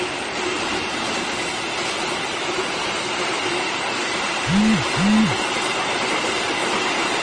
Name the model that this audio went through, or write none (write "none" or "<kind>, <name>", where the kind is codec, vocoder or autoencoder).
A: none